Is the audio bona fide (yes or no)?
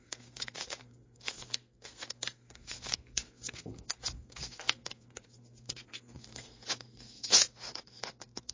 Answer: no